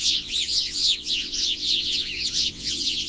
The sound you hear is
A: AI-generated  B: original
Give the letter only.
A